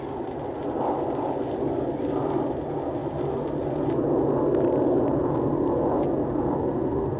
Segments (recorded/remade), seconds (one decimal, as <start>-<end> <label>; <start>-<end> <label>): 0.0-7.2 recorded